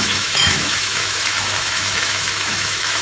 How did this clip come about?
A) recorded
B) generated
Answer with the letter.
B